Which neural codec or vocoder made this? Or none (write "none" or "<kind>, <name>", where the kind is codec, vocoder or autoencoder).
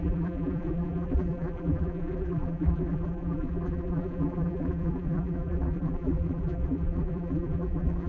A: vocoder, BigVGAN v2